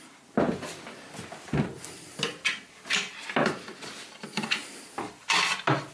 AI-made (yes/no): no